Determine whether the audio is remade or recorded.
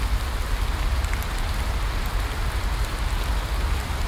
recorded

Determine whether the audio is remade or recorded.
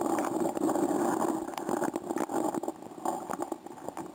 recorded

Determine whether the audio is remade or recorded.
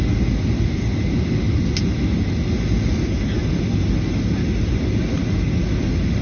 recorded